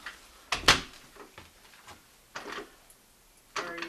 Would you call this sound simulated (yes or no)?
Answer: no